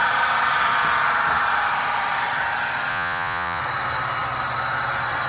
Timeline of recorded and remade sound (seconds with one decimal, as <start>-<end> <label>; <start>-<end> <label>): 0.0-2.9 recorded; 2.9-3.6 remade; 3.6-5.3 recorded